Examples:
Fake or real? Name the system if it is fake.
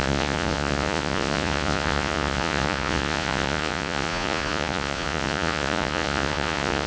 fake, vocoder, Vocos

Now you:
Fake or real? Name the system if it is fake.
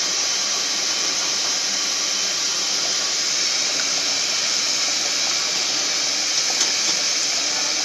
real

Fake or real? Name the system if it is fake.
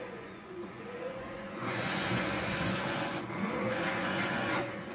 fake, vocoder, Vocos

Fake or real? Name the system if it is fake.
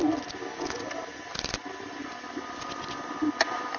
real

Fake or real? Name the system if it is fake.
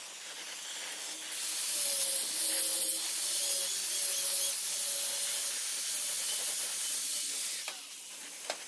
real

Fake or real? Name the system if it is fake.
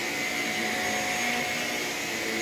real